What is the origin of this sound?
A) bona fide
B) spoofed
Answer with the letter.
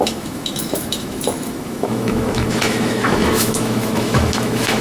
B